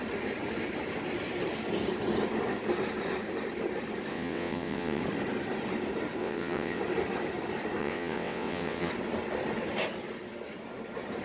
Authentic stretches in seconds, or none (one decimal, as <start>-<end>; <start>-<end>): 0.0-4.1; 5.0-6.2; 6.8-7.8; 8.9-11.2